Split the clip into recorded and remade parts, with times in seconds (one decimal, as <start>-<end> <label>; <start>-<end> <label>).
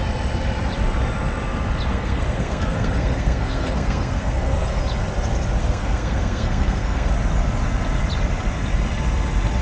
0.0-1.9 recorded; 1.9-4.8 remade; 4.8-5.6 recorded; 5.6-7.1 remade; 7.1-9.6 recorded